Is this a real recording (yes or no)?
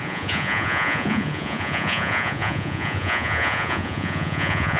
no